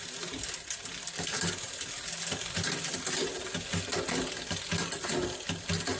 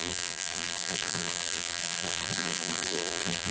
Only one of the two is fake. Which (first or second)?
second